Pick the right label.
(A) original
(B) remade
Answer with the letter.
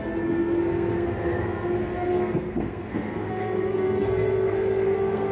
B